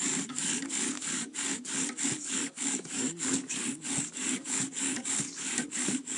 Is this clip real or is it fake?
fake